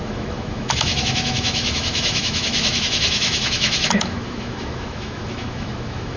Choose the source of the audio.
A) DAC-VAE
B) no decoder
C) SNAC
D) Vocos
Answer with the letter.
A